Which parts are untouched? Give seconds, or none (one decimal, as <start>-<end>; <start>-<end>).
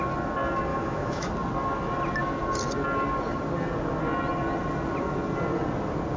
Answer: 0.0-0.7; 1.3-6.2